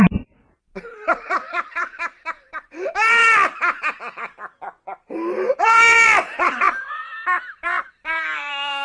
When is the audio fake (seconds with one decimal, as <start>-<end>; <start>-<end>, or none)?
0.0-3.2; 5.5-8.8